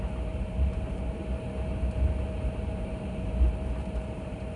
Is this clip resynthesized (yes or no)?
yes